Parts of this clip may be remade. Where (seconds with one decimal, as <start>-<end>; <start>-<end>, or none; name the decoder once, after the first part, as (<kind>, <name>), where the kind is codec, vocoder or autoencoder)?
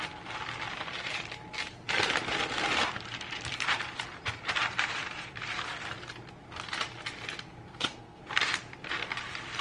7.7-8.2 (codec, SNAC)